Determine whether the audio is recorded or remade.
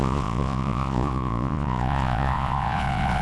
remade